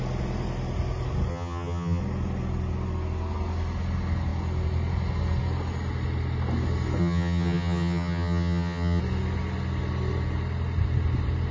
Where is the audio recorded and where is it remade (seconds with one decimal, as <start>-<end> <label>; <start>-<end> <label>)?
0.0-1.3 recorded; 1.3-2.0 remade; 2.0-7.0 recorded; 7.0-9.0 remade; 9.0-11.5 recorded